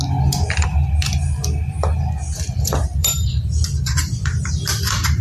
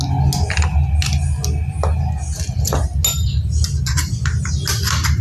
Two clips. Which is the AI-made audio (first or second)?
first